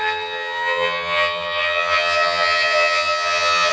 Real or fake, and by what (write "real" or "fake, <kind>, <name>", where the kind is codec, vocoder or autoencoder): fake, vocoder, HiFi-GAN